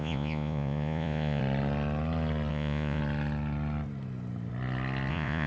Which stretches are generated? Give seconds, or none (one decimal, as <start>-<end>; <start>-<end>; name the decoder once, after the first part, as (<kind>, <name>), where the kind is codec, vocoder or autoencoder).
0.0-1.4 (vocoder, Vocos); 2.5-3.0; 5.1-5.5